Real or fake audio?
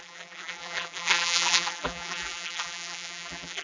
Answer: fake